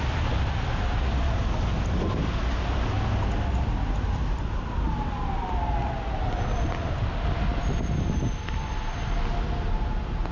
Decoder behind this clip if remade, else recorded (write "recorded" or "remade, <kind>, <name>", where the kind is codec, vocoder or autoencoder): recorded